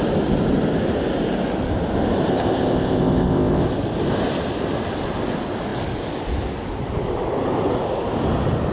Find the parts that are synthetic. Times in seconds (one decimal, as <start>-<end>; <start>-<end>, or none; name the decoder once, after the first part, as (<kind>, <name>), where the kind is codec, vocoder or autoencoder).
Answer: 2.3-3.6 (codec, ZipCodec)